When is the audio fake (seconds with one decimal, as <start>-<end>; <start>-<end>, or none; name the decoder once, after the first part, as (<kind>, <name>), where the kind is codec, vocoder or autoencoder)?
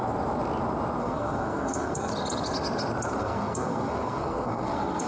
1.0-2.1 (codec, SNAC); 3.2-5.1